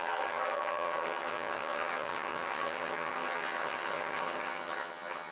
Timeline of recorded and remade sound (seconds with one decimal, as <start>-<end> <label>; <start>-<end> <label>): 0.0-5.3 remade